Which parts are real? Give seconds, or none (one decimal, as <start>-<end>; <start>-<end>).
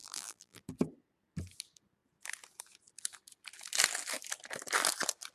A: 0.6-5.3